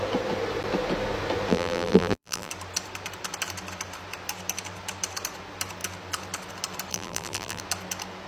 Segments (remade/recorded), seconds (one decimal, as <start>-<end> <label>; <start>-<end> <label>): 0.0-1.5 recorded; 1.5-2.5 remade; 2.5-6.9 recorded; 6.9-7.6 remade; 7.6-8.3 recorded